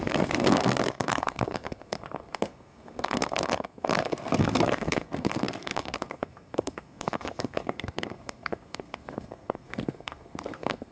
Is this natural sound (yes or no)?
no